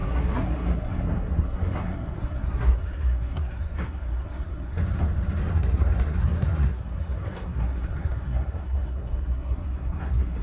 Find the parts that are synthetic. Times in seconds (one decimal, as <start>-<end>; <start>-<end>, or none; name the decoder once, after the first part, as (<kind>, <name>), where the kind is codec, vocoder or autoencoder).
0.0-4.8 (codec, SNAC); 5.4-10.4